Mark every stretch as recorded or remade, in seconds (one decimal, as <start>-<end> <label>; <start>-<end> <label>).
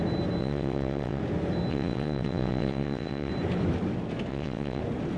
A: 0.0-0.4 recorded; 0.4-1.2 remade; 1.2-1.7 recorded; 1.7-3.3 remade; 3.3-4.3 recorded; 4.3-4.8 remade; 4.8-5.2 recorded